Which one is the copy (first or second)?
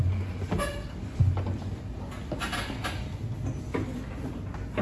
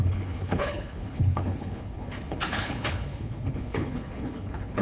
second